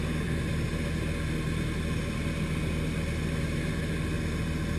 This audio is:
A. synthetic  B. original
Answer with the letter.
B